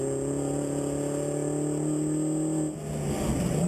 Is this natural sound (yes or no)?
yes